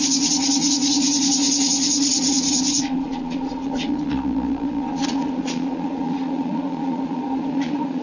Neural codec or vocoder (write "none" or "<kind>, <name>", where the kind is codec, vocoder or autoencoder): vocoder, Vocos